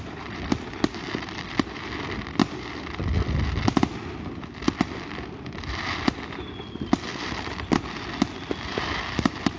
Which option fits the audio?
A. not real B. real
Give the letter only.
B